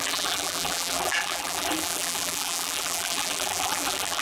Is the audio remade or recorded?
remade